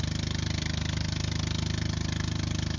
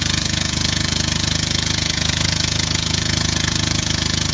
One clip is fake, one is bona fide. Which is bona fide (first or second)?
first